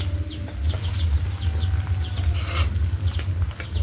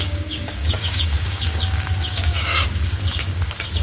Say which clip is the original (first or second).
first